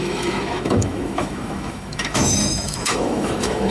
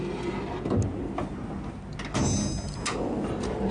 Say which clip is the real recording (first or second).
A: second